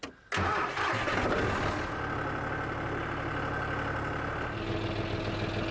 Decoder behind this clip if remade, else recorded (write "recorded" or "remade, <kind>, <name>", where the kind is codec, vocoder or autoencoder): recorded